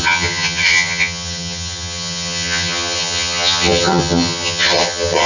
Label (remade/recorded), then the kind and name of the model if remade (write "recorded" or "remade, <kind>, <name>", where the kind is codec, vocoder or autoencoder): remade, vocoder, HiFi-GAN